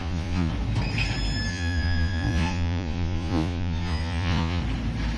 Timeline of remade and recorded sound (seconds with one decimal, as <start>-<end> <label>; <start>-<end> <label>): 0.0-0.5 remade; 0.5-1.5 recorded; 1.5-4.6 remade; 4.6-5.2 recorded